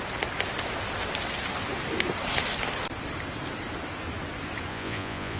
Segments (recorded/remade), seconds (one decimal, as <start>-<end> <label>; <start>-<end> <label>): 0.0-4.7 recorded; 4.7-5.4 remade